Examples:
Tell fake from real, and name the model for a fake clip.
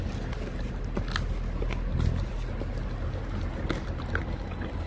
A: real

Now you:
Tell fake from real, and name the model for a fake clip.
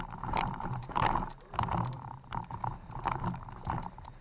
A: fake, vocoder, BigVGAN v2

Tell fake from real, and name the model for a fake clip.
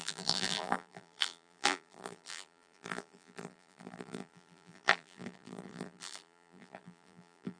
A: fake, vocoder, BigVGAN v2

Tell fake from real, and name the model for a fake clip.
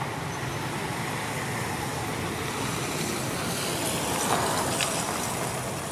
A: real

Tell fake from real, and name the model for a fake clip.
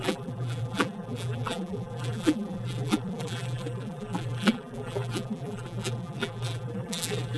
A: fake, vocoder, BigVGAN v2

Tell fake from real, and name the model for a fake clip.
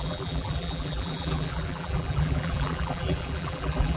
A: fake, vocoder, BigVGAN v2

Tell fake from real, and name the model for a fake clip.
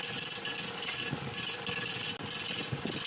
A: real